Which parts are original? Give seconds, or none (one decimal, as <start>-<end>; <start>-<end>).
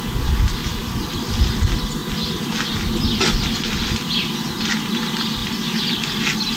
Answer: 0.0-6.6